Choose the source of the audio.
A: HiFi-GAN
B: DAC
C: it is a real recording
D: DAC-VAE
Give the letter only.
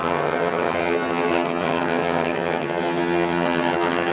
A